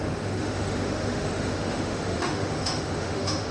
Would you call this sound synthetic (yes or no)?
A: yes